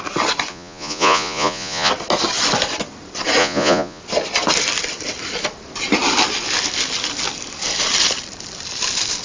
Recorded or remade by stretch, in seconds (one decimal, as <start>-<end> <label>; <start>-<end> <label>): 0.0-0.5 recorded; 0.5-1.9 remade; 1.9-3.4 recorded; 3.4-4.0 remade; 4.0-9.2 recorded